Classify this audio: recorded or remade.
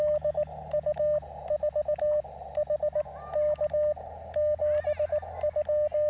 recorded